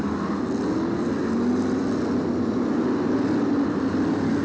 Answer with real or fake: real